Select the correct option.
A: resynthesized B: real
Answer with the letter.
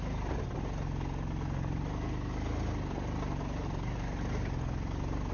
B